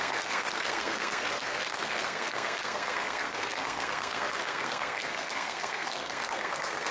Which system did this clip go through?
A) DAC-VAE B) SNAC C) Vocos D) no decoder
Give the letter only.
B